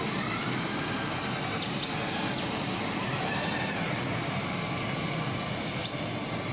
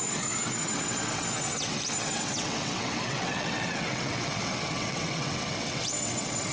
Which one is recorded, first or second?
first